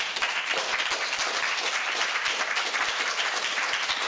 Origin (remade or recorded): recorded